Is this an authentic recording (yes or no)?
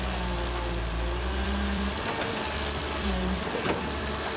no